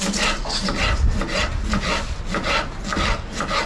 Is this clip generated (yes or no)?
no